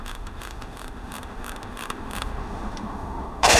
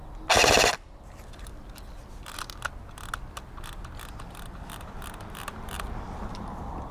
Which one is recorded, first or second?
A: second